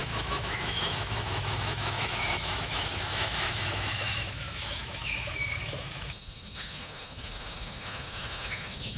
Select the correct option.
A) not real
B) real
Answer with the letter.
A